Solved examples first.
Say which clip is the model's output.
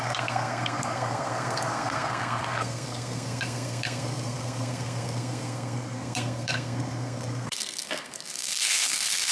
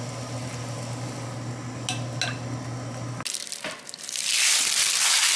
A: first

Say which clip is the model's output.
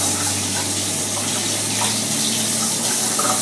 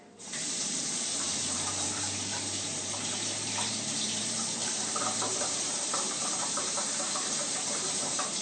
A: second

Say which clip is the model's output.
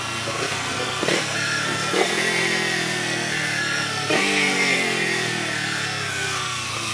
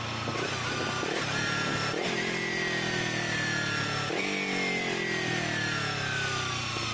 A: first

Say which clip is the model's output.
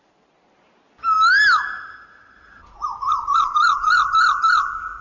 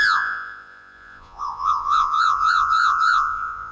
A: second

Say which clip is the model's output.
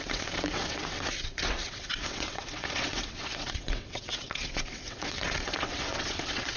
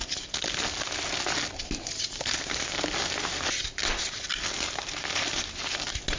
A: first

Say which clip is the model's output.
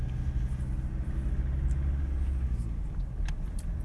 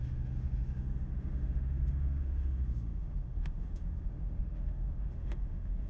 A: second